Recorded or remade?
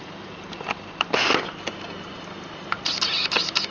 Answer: recorded